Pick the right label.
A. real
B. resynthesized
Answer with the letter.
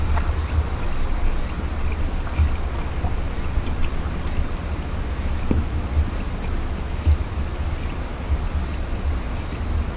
A